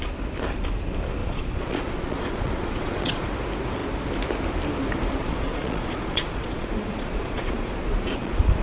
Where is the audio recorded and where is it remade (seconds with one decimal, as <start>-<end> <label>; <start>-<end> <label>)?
0.0-1.2 recorded; 1.2-3.3 remade; 3.3-5.2 recorded; 5.2-8.6 remade